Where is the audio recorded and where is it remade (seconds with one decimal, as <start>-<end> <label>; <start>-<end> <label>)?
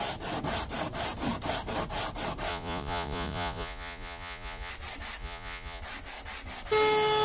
0.0-2.5 recorded; 2.5-4.7 remade; 4.7-5.2 recorded; 5.2-5.8 remade; 5.8-7.2 recorded